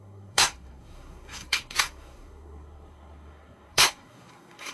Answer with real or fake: fake